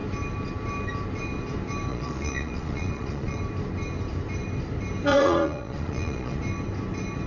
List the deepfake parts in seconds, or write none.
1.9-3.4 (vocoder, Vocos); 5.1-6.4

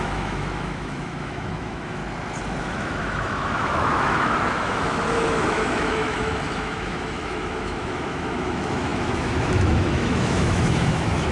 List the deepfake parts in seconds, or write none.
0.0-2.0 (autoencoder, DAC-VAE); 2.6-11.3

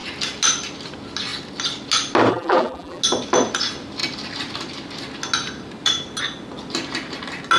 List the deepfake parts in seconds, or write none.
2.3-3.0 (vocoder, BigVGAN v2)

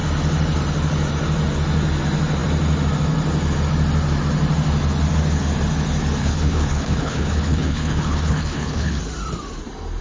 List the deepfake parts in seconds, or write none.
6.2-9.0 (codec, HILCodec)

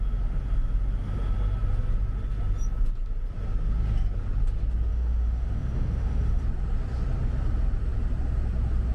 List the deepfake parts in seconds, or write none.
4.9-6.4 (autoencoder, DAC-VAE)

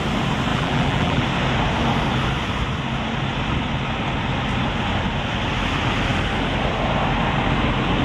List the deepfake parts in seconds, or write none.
0.5-1.2 (vocoder, BigVGAN v2)